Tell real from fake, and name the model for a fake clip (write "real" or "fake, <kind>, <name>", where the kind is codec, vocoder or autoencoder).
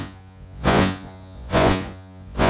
fake, vocoder, Vocos